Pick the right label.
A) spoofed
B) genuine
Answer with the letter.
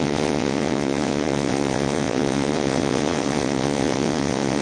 A